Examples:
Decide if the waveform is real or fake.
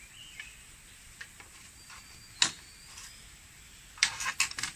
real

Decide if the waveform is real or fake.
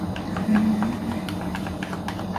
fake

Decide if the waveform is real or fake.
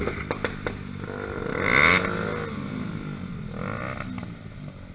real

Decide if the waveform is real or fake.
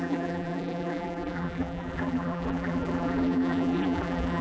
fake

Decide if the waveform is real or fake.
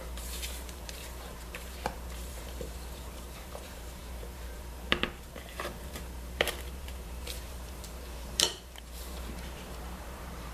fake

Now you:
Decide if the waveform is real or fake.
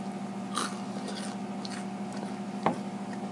real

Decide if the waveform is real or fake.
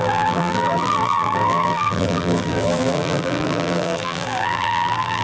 fake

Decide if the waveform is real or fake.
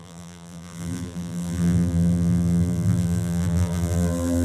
fake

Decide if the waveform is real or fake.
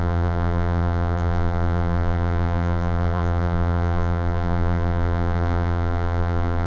fake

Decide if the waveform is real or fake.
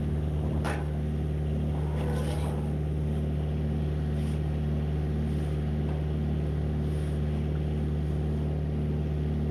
real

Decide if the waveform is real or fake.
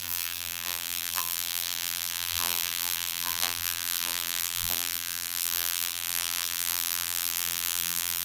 fake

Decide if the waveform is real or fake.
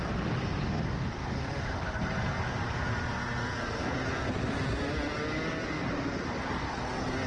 real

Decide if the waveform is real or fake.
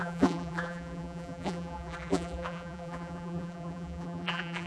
fake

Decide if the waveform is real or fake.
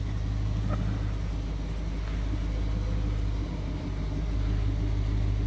real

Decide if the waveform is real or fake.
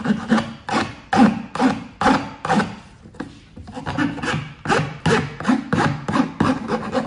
real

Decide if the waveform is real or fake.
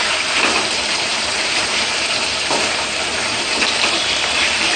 fake